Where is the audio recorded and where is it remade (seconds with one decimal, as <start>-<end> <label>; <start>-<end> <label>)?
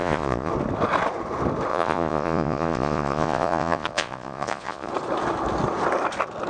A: 0.0-0.5 remade; 0.5-1.7 recorded; 1.7-4.9 remade; 4.9-6.5 recorded